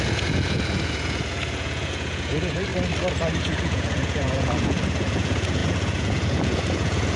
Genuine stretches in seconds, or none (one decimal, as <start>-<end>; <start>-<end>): 2.7-3.4